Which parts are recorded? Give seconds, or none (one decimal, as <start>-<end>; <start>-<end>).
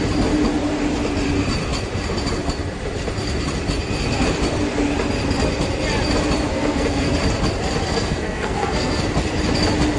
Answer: 0.0-6.5; 7.1-7.9; 9.0-10.0